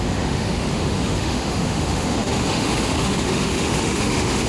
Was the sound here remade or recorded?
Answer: remade